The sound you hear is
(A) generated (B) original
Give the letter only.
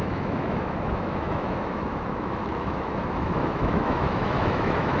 A